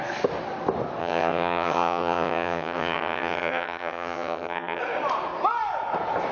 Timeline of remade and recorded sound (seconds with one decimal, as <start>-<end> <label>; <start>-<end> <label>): 0.0-1.0 recorded; 1.0-4.8 remade; 4.8-6.3 recorded